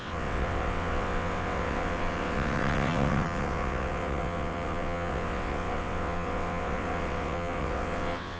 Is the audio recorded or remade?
remade